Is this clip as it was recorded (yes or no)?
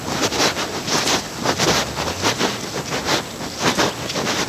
yes